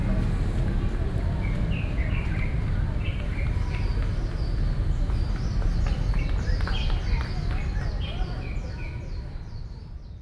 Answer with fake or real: real